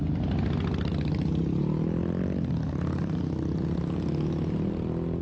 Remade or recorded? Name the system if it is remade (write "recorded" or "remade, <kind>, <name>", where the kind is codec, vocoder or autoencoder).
recorded